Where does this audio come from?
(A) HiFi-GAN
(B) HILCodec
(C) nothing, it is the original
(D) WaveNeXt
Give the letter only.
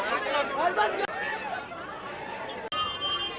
C